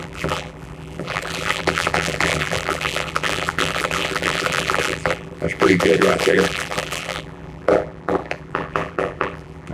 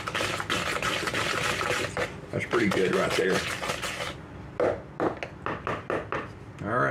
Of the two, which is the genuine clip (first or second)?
second